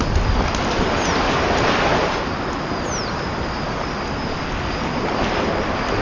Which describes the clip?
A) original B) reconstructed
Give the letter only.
A